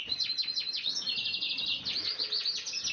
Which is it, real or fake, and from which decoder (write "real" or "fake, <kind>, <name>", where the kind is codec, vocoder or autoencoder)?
real